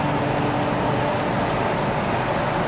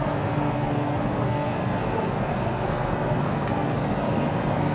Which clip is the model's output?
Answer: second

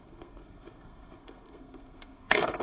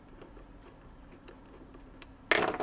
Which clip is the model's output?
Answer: first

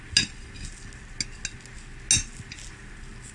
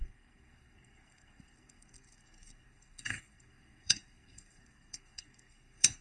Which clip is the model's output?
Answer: second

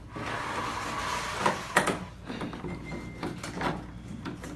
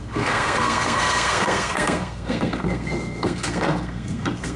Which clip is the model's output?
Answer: second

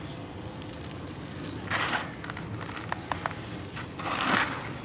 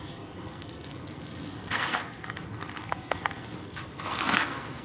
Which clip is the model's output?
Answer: second